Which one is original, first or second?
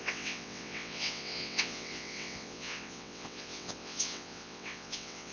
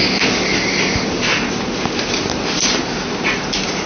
second